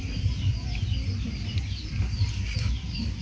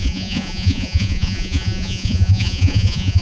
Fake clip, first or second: second